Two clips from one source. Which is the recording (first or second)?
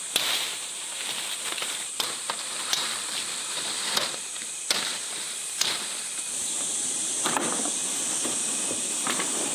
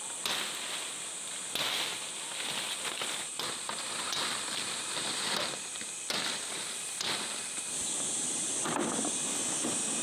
second